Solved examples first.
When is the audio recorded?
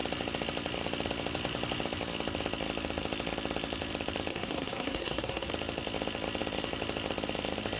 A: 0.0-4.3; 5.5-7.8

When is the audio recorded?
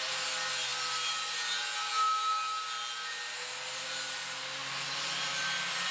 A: 0.0-5.9